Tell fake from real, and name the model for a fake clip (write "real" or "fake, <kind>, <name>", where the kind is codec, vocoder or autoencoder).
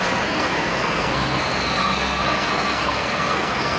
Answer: fake, codec, SNAC